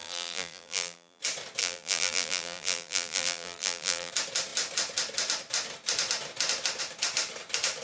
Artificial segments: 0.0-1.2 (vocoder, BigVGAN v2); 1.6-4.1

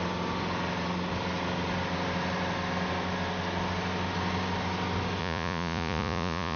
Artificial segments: 5.2-6.6 (vocoder, Vocos)